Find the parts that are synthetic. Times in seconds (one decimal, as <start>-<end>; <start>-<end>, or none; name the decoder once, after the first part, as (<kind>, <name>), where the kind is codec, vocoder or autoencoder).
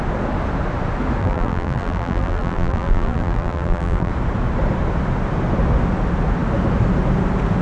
1.2-4.1 (vocoder, BigVGAN v2)